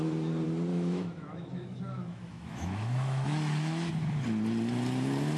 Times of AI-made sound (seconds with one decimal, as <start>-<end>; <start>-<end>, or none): 0.7-3.9

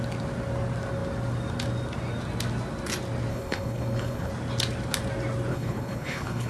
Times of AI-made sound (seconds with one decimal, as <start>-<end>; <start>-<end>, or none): 3.3-4.3; 5.5-6.5

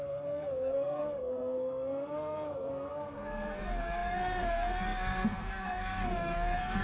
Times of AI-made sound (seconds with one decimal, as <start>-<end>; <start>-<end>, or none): 0.0-6.8

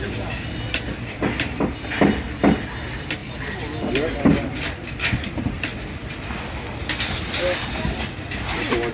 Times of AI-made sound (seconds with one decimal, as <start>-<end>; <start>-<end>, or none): none